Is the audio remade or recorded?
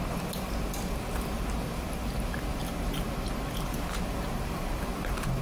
remade